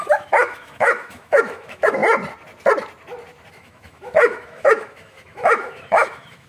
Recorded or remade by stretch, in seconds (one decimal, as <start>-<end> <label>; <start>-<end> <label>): 0.0-2.0 remade; 2.0-3.5 recorded; 3.5-6.5 remade